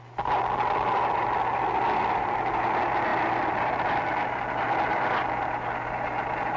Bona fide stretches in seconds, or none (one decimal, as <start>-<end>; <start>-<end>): 0.0-6.6